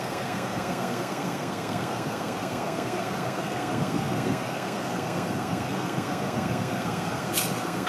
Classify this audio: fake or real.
fake